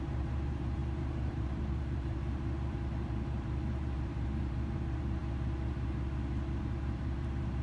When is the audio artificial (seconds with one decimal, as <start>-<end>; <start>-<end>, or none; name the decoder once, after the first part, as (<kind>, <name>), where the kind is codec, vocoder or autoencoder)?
0.0-5.2 (vocoder, BigVGAN v2); 6.6-7.6